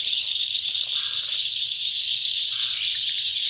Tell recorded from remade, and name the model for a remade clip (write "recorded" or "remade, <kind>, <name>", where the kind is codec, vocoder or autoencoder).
remade, vocoder, BigVGAN v2